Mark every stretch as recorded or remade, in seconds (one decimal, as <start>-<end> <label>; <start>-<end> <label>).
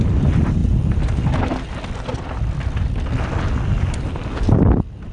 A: 0.0-5.1 recorded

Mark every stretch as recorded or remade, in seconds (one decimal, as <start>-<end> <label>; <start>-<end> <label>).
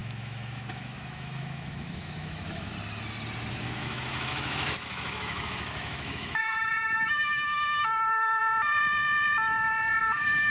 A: 0.0-2.7 remade; 2.7-3.5 recorded; 3.5-8.4 remade; 8.4-10.0 recorded; 10.0-10.5 remade